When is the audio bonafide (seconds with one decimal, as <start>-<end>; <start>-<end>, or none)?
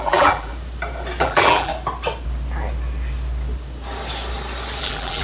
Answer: 0.5-1.2; 1.7-4.8